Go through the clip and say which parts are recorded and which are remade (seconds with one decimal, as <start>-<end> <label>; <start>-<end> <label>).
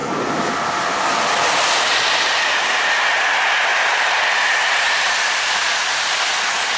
0.0-3.7 recorded; 3.7-5.7 remade; 5.7-6.8 recorded